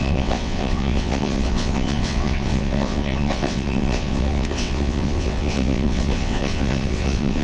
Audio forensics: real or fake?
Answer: fake